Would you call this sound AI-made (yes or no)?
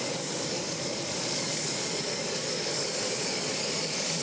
yes